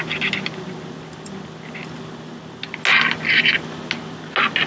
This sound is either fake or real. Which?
real